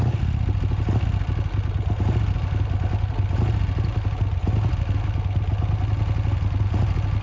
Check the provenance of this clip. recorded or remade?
recorded